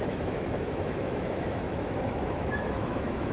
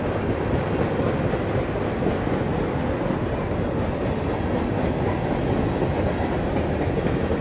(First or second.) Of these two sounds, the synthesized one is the first